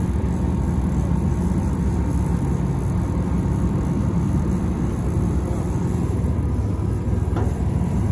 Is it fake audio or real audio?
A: real